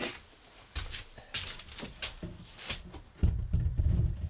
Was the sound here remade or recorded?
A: recorded